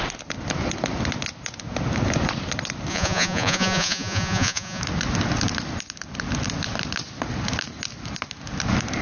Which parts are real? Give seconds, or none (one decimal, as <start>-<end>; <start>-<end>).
0.0-2.9; 4.8-9.0